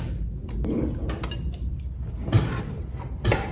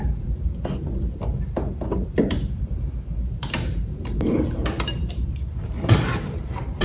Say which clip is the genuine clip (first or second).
first